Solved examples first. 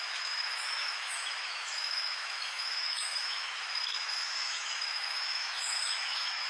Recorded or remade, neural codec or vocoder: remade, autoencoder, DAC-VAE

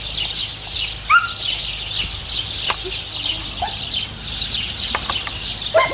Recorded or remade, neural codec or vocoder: recorded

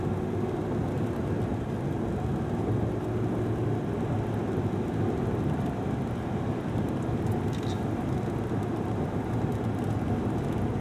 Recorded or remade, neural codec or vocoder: recorded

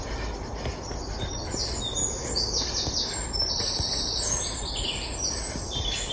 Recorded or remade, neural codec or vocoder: recorded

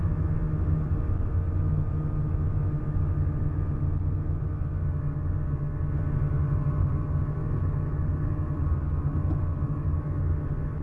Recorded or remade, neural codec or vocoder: recorded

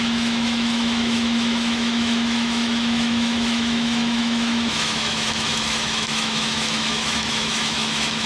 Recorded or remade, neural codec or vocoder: remade, autoencoder, DAC-VAE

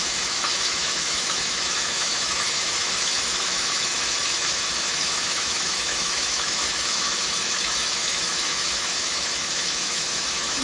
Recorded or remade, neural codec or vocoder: remade, autoencoder, DAC-VAE